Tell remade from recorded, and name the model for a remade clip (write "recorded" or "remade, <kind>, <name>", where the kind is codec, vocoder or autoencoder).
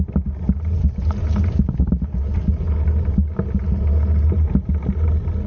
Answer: recorded